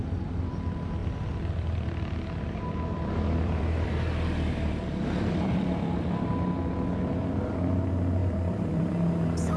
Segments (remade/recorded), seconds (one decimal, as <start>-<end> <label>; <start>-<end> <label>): 0.0-1.0 recorded; 1.0-6.2 remade; 6.2-8.2 recorded; 8.2-8.9 remade; 8.9-9.6 recorded